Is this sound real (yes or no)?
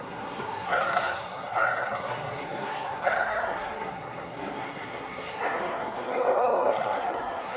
no